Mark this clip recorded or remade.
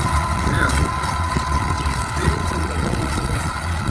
remade